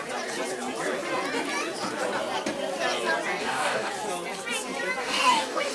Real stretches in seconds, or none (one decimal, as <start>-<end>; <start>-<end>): 0.0-3.4; 3.9-5.0